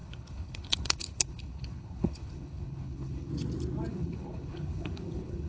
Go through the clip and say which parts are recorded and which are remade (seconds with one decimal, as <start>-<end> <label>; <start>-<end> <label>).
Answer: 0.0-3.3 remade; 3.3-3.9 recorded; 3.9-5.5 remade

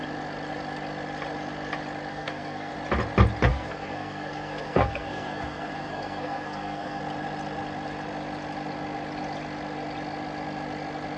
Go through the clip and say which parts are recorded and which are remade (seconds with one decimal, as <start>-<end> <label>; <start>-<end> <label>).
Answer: 0.0-2.1 recorded; 2.1-2.7 remade; 2.7-3.5 recorded; 3.5-7.0 remade; 7.0-11.2 recorded

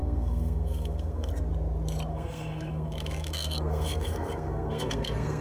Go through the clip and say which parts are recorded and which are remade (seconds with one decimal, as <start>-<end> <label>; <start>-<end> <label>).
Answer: 0.0-1.3 remade; 1.3-2.1 recorded; 2.1-5.4 remade